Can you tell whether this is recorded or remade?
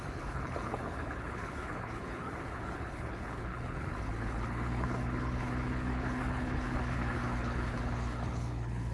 remade